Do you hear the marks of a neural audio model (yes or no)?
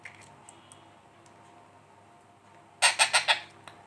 no